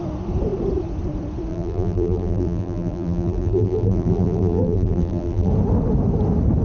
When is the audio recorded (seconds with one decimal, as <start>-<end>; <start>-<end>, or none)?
0.0-1.5; 5.5-6.6